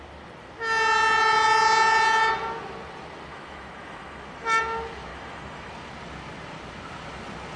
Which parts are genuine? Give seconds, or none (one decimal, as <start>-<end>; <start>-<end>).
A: 0.0-3.3; 4.6-5.1; 5.7-7.6